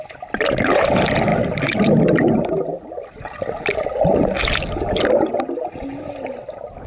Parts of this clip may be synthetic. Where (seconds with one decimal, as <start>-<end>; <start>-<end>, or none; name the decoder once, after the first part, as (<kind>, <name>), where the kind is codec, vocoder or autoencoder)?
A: 0.0-4.1 (vocoder, BigVGAN v2); 6.0-6.9